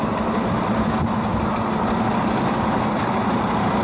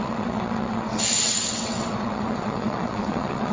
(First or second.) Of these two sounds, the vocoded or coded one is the second